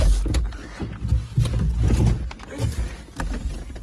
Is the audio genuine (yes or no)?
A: yes